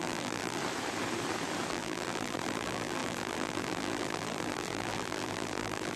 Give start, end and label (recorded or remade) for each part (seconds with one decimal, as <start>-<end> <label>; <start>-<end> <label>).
0.0-0.6 remade; 0.6-1.7 recorded; 1.7-6.0 remade